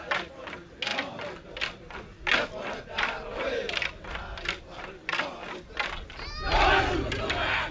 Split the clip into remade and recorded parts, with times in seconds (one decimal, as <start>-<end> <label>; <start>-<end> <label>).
0.0-7.7 recorded